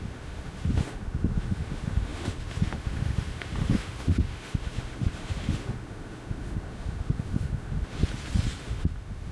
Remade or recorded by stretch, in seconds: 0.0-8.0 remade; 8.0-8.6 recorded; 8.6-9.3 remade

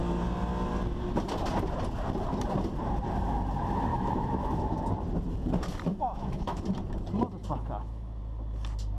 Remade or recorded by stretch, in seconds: 0.0-3.9 recorded; 3.9-4.8 remade; 4.8-5.9 recorded; 5.9-6.6 remade; 6.6-7.4 recorded; 7.4-8.2 remade; 8.2-9.0 recorded

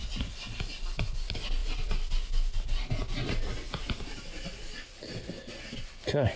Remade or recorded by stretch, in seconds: 0.0-6.4 recorded